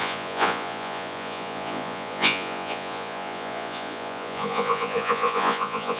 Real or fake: fake